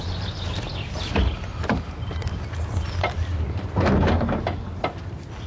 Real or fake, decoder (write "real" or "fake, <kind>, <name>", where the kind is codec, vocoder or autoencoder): real